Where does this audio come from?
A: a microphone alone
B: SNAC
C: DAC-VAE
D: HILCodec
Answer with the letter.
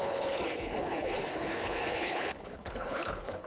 D